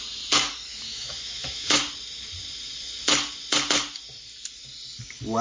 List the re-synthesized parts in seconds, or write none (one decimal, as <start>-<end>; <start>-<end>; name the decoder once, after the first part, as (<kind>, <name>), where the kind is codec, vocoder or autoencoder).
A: 0.7-1.8 (autoencoder, DAC-VAE)